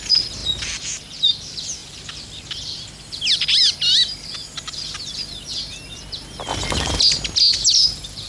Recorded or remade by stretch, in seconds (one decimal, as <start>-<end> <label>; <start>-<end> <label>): 0.0-8.3 recorded